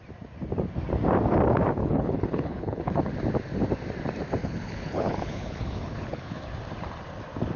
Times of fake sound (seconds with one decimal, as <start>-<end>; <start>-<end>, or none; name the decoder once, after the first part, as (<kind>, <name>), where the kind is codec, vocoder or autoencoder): 1.8-3.1 (codec, HILCodec); 4.4-6.4